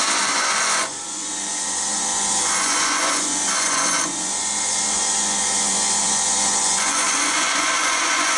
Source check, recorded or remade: remade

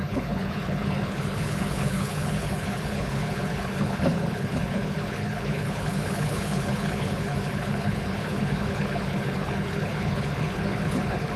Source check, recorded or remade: remade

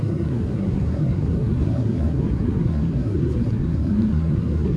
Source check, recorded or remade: remade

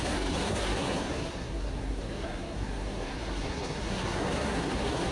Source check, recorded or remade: remade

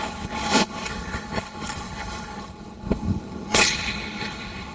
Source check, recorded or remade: remade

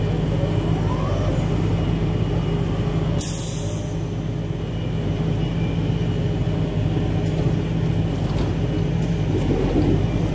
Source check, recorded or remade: recorded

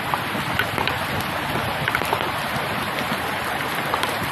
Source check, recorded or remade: recorded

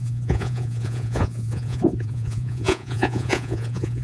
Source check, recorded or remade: remade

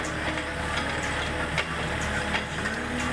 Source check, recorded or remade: recorded